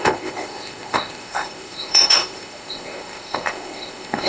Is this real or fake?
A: fake